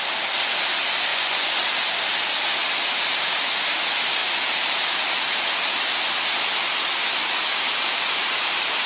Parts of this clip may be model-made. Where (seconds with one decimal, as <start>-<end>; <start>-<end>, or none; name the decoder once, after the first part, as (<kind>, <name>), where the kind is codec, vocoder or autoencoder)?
1.1-1.6 (vocoder, Vocos)